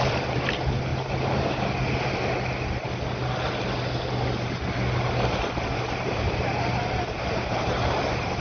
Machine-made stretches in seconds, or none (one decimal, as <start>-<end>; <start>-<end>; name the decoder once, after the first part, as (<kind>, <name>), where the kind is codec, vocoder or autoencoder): 0.0-0.9 (vocoder, BigVGAN v2); 5.9-8.4